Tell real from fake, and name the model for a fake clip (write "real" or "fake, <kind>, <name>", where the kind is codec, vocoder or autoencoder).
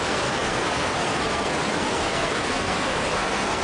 fake, codec, SNAC